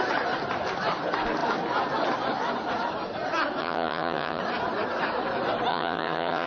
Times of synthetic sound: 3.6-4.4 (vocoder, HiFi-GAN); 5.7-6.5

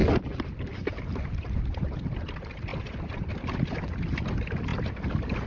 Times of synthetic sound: none

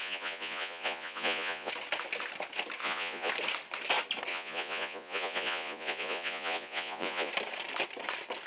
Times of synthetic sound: 0.0-1.7 (vocoder, Vocos); 2.8-3.3; 4.3-7.3